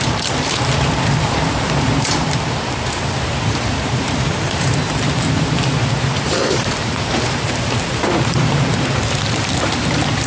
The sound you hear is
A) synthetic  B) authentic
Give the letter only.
A